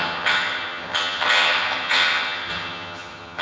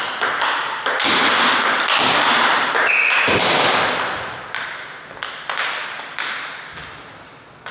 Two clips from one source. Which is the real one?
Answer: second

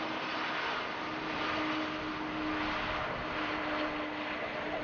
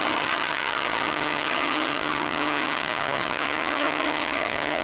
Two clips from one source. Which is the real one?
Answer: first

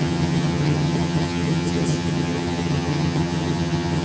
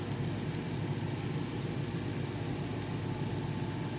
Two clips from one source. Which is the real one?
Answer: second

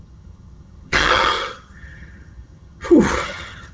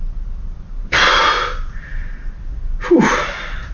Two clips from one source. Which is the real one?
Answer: second